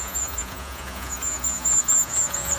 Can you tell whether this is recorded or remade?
remade